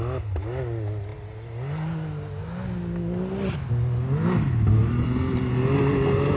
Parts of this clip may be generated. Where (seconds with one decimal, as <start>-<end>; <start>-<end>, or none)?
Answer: none